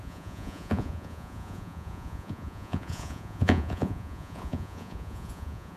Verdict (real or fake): fake